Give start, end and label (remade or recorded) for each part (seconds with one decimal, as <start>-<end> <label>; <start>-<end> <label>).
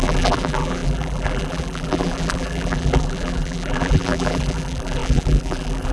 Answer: 0.0-5.9 remade